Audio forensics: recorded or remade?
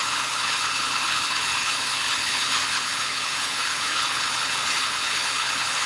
remade